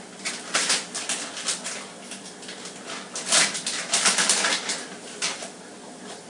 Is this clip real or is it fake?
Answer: real